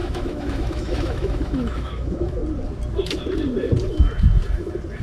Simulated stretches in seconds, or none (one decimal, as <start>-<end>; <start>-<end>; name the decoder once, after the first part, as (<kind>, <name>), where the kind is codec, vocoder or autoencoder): 0.0-2.4 (autoencoder, DAC-VAE)